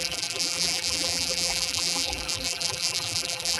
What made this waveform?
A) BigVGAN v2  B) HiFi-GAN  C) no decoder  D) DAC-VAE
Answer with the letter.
A